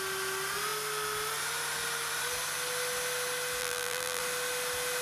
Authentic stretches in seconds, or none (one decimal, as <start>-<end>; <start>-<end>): 0.0-3.6; 4.2-5.0